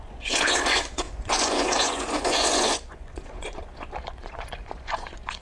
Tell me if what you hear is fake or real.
fake